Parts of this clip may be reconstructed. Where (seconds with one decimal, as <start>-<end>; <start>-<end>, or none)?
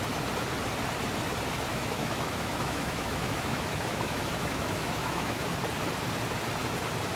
1.7-5.6